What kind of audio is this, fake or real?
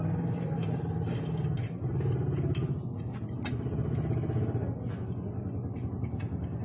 real